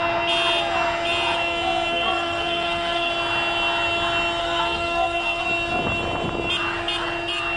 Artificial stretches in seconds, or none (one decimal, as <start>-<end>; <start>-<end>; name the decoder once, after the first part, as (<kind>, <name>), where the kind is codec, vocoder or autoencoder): 1.9-3.1 (codec, SNAC); 4.4-5.4